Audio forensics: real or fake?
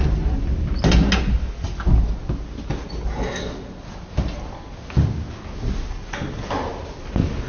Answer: real